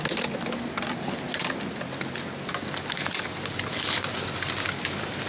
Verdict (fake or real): real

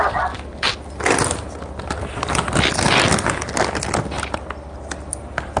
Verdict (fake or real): real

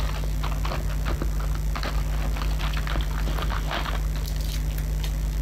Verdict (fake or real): real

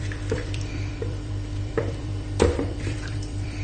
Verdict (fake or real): fake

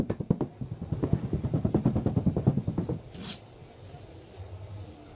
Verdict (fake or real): real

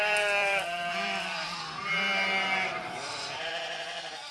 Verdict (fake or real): fake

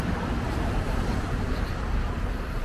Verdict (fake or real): fake